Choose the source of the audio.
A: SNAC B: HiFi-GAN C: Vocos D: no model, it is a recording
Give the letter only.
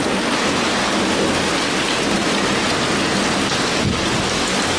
D